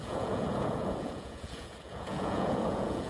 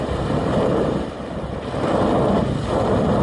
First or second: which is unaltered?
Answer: second